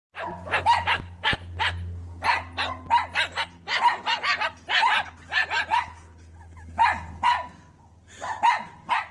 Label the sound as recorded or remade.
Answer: recorded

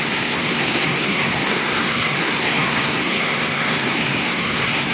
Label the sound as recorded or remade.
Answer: remade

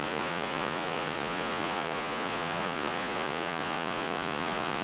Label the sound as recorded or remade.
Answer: remade